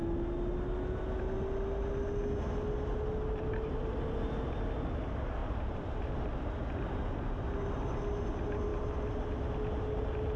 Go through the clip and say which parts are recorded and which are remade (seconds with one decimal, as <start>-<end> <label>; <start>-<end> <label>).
0.0-5.4 recorded; 5.4-6.1 remade; 6.1-10.4 recorded